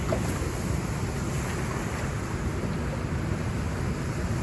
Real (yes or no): yes